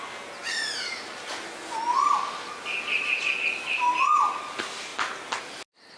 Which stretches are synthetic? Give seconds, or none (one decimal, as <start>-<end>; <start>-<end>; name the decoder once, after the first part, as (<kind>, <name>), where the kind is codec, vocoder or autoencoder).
none